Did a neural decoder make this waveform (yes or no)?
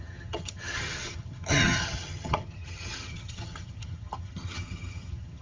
yes